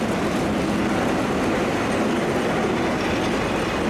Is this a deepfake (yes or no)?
no